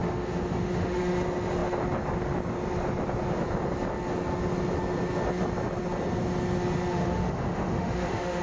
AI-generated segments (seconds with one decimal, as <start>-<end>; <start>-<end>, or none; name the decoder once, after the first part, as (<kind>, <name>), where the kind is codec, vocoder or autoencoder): 0.0-1.0 (autoencoder, DAC-VAE); 6.9-8.4